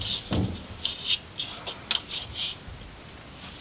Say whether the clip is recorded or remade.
recorded